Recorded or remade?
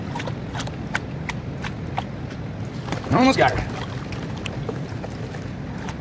recorded